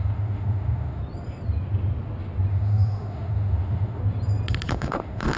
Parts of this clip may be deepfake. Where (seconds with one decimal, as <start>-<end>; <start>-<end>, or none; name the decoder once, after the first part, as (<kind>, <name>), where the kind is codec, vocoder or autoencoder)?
0.0-1.0 (autoencoder, DAC-VAE); 2.5-4.0; 4.7-5.4